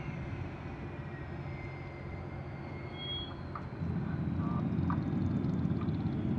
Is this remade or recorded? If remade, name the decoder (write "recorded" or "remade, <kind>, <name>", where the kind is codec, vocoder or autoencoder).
recorded